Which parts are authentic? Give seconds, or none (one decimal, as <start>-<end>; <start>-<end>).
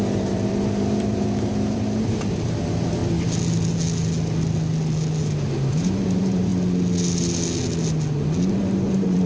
3.0-5.7; 6.5-8.5